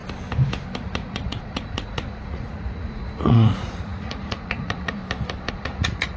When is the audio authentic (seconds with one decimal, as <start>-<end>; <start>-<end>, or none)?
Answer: 0.0-0.8; 5.0-5.5